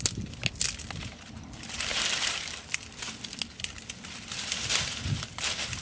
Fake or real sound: real